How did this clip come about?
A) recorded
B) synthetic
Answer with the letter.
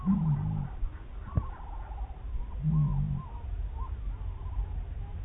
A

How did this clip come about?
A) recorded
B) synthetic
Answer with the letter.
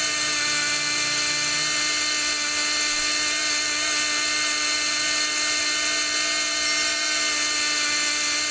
A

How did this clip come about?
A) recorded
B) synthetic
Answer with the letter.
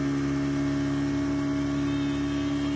A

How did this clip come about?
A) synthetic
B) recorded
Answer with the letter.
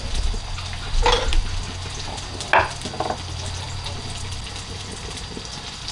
B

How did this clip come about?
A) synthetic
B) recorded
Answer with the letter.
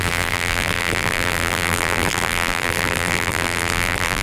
A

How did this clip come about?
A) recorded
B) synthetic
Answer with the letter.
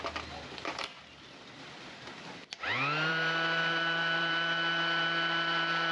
B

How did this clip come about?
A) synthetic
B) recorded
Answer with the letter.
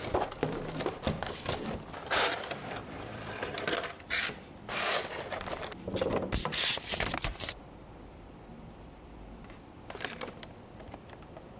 A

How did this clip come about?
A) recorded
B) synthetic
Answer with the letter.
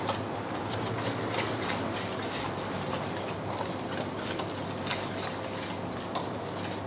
A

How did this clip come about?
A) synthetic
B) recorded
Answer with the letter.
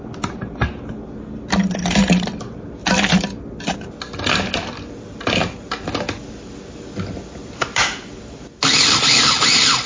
B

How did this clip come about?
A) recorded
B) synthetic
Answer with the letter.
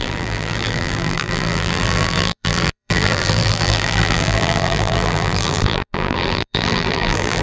B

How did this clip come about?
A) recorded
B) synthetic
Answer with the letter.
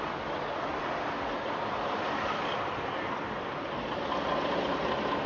A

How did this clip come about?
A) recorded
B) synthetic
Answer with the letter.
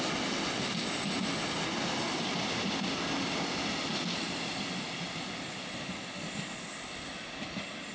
A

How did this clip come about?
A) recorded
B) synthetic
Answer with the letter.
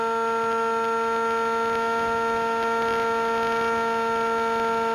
A